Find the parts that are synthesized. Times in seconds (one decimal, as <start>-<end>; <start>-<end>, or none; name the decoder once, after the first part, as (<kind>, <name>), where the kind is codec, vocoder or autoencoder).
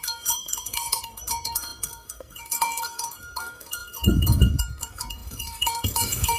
0.0-6.4 (codec, SNAC)